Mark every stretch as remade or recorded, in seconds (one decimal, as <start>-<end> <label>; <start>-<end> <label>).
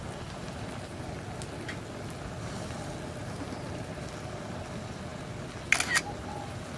0.0-6.8 recorded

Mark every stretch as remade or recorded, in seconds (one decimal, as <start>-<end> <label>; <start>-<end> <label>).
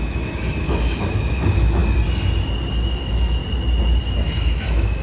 0.0-1.8 remade; 1.8-2.7 recorded; 2.7-3.4 remade; 3.4-4.0 recorded; 4.0-5.0 remade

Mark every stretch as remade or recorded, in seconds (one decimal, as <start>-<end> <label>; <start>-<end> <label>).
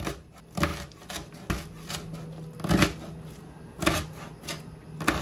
0.0-5.2 recorded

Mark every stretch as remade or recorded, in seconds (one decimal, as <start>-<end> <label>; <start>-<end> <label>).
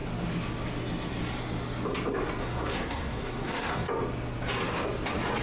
0.0-2.4 recorded; 2.4-3.9 remade; 3.9-5.4 recorded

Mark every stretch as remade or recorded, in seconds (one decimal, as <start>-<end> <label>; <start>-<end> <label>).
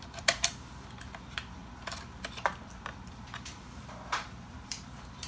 0.0-5.3 remade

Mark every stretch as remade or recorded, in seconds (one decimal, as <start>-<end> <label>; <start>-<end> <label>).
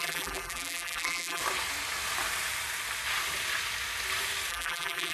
0.0-1.4 remade; 1.4-4.5 recorded; 4.5-5.1 remade